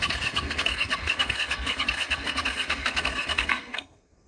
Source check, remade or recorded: remade